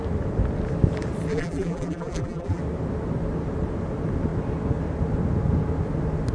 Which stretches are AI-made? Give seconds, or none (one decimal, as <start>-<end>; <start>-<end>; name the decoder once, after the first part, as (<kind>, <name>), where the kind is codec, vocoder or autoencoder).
1.3-2.6 (vocoder, BigVGAN v2)